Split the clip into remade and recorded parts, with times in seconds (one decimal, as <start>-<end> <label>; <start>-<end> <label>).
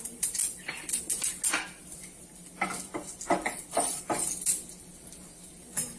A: 0.0-0.4 remade; 0.4-4.0 recorded; 4.0-6.0 remade